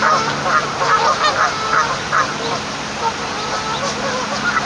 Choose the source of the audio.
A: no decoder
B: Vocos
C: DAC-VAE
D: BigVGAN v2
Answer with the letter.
A